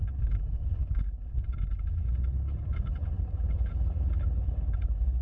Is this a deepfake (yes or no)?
yes